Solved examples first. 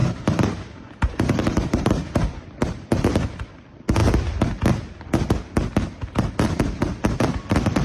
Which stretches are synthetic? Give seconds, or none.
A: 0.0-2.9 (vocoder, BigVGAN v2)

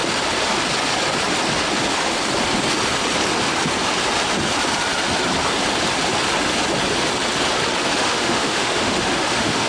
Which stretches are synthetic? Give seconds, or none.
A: 7.9-9.7 (autoencoder, DAC-VAE)